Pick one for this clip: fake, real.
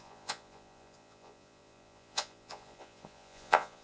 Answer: fake